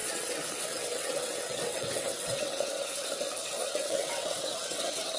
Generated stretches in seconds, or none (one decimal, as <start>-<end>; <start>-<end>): 0.0-3.1; 3.7-5.2